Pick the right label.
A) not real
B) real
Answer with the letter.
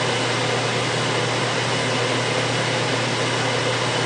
B